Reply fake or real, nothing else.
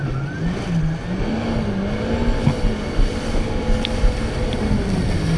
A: real